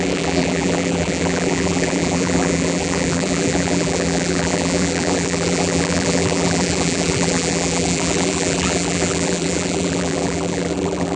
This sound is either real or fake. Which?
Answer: fake